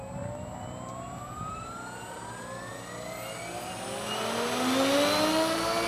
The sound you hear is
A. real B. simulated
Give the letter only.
A